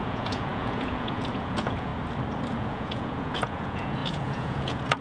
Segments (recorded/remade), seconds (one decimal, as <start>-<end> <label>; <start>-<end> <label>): 0.0-1.9 remade; 1.9-2.5 recorded; 2.5-5.0 remade